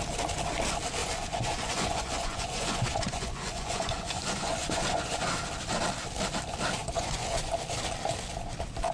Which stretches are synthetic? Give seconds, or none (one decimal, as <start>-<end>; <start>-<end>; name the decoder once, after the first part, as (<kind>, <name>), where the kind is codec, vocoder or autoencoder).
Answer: 1.0-5.3 (vocoder, Vocos); 6.8-7.5